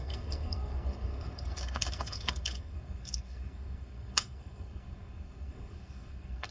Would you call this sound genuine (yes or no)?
no